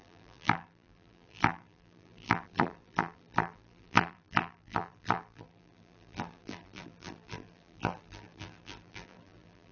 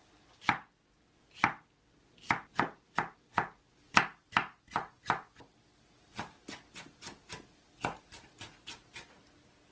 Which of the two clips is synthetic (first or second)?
first